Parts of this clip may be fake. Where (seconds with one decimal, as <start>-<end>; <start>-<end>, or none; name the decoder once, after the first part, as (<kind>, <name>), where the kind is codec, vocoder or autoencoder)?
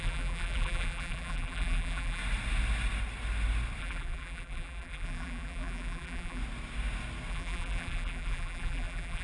0.0-2.2 (vocoder, BigVGAN v2); 3.8-6.4; 7.3-9.2